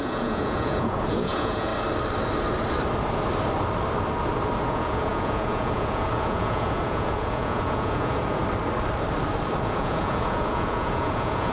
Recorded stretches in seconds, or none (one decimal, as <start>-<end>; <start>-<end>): 1.7-4.6; 8.4-9.6